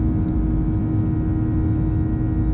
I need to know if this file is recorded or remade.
recorded